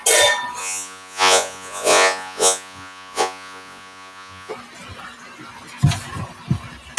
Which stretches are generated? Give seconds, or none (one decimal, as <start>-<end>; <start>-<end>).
0.6-4.5